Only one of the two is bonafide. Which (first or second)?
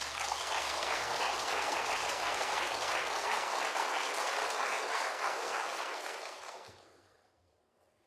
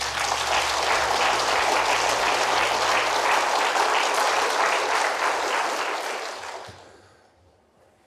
second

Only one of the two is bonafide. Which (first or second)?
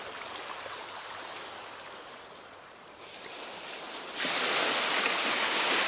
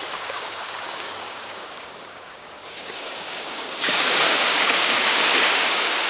first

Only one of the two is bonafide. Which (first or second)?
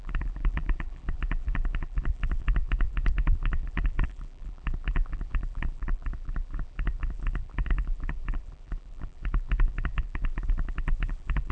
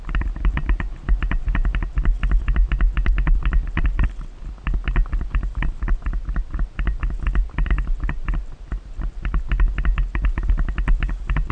second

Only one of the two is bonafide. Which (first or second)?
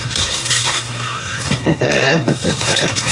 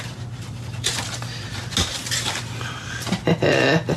second